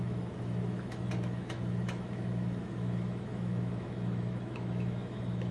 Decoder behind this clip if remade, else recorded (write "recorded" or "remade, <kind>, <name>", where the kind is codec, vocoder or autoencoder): remade, autoencoder, DAC-VAE